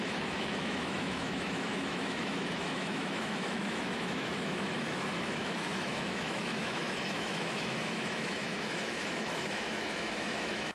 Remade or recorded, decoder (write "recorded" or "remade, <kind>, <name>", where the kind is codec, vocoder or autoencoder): remade, autoencoder, DAC-VAE